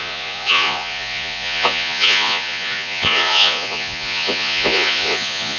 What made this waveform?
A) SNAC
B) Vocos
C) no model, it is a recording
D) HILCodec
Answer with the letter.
B